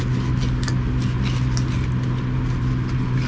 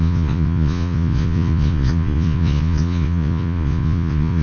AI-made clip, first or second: second